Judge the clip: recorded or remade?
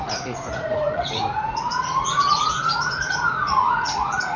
remade